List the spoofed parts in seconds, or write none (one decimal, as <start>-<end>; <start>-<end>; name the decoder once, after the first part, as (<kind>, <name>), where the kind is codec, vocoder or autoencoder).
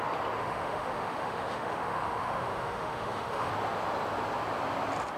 0.4-3.5 (autoencoder, DAC-VAE)